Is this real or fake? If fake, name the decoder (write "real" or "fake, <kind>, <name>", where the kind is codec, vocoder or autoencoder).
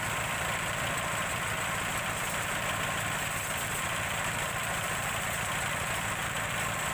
fake, vocoder, BigVGAN v2